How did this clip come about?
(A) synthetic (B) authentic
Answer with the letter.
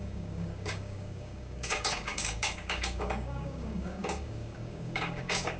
A